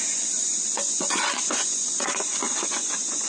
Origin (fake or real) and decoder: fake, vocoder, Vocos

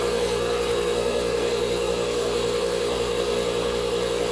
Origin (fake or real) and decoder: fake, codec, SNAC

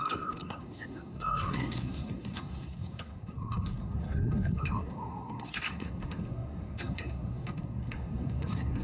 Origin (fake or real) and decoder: fake, codec, SNAC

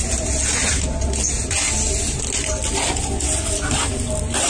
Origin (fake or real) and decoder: real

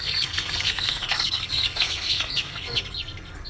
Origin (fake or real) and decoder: fake, codec, SNAC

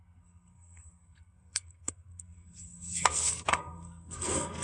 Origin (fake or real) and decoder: fake, codec, SNAC